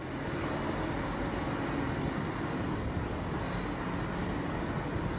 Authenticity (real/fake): real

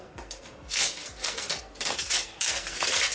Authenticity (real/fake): fake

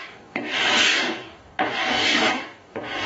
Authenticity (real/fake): fake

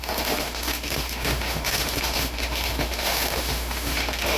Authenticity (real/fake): fake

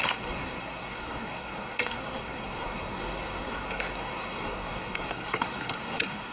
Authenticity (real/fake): fake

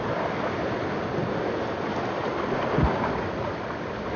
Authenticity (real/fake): real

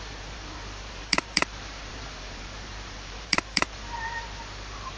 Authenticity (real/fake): fake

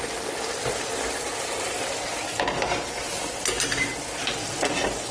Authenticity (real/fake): real